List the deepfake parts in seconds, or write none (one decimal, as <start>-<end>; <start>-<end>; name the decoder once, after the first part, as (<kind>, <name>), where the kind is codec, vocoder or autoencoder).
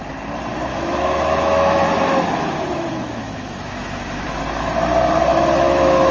0.7-4.4 (autoencoder, DAC-VAE); 5.3-6.1